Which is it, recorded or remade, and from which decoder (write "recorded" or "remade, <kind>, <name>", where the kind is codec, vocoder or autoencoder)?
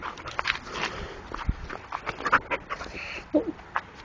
recorded